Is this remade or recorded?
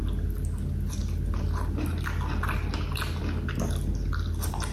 recorded